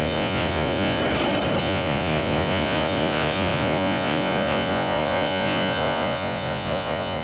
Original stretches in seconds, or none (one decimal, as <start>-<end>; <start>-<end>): 1.0-1.6